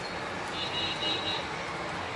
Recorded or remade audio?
recorded